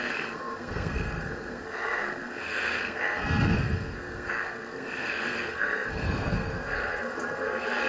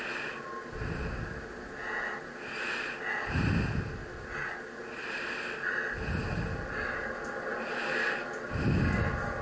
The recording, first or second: second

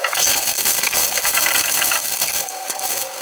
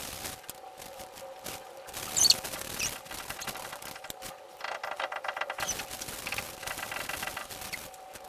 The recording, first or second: second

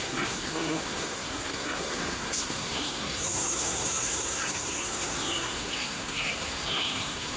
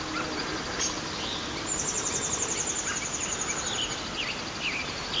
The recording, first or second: second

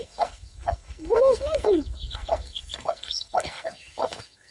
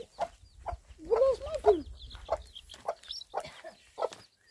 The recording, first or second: second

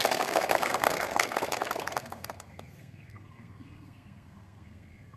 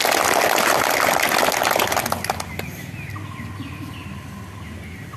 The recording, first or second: second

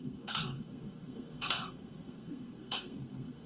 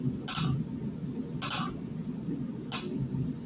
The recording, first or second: second